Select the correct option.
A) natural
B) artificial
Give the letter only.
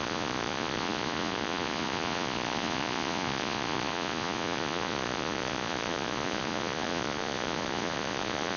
B